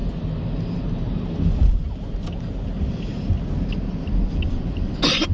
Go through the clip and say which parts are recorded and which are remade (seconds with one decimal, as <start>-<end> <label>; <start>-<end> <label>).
0.0-5.3 recorded